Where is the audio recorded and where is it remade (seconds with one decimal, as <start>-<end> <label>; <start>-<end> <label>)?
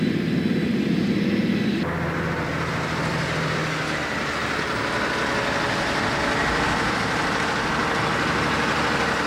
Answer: 0.0-9.3 recorded